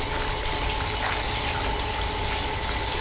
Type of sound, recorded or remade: recorded